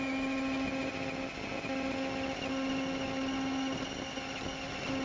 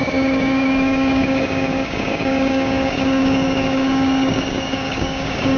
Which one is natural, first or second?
first